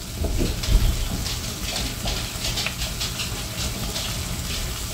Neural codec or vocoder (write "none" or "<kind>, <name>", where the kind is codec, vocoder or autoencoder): none